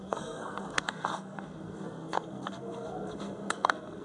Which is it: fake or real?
fake